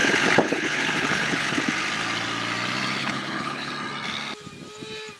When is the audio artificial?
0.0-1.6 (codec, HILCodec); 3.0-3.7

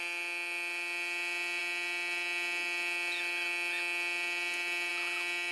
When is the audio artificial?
none

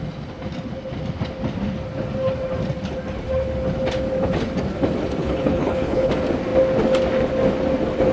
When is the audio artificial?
5.2-6.1 (codec, HILCodec)